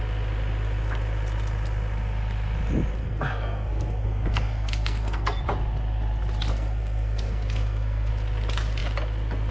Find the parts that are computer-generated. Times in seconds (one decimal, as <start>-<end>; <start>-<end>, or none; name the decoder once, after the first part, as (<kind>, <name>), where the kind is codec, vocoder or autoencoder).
3.0-5.4 (codec, SNAC); 6.5-8.1